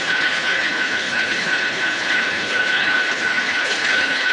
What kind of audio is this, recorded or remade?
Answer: remade